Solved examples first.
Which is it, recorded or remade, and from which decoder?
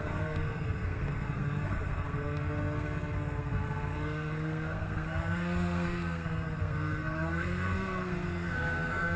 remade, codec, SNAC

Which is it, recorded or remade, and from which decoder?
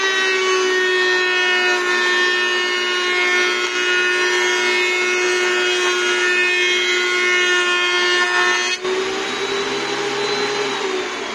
recorded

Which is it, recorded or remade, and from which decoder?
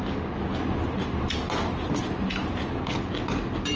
recorded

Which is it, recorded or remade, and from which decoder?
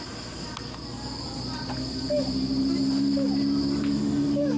recorded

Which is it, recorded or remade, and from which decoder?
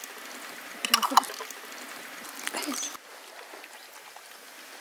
recorded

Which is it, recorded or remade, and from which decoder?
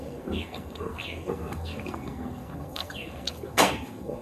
remade, codec, SNAC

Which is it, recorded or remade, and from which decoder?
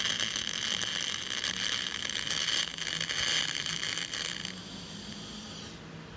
recorded